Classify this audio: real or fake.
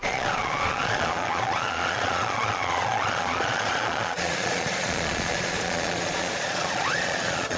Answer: fake